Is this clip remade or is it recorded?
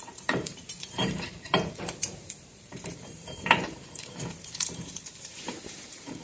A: remade